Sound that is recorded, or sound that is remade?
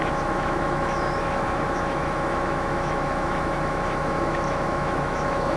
remade